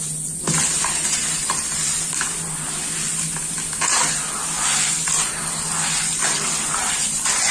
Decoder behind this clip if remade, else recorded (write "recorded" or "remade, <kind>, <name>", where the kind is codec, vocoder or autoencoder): recorded